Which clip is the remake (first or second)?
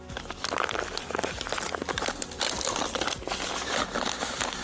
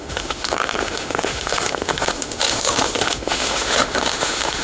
second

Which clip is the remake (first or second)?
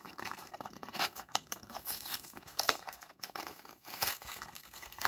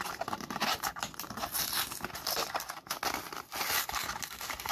first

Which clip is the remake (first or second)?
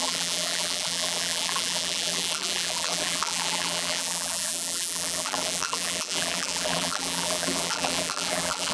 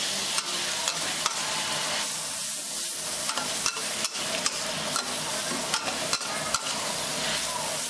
first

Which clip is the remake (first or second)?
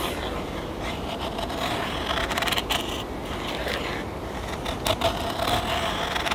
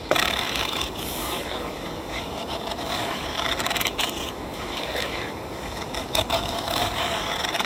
second